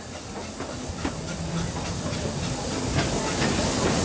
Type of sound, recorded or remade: recorded